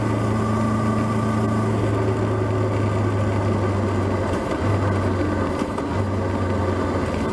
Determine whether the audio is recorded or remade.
recorded